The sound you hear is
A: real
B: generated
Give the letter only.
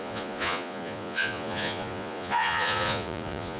B